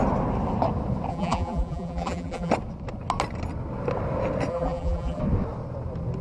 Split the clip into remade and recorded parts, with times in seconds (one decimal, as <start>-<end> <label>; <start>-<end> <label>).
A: 0.0-1.1 recorded; 1.1-2.5 remade; 2.5-4.5 recorded; 4.5-5.2 remade; 5.2-6.2 recorded